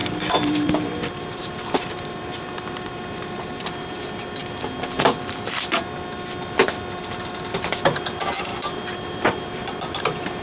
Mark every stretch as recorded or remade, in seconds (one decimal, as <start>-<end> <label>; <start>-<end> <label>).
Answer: 0.0-4.0 remade; 4.0-8.5 recorded; 8.5-10.0 remade; 10.0-10.4 recorded